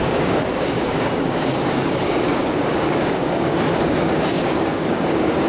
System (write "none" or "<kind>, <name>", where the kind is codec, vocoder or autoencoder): codec, DAC